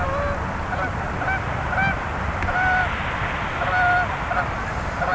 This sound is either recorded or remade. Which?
recorded